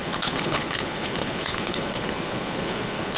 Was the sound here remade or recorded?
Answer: remade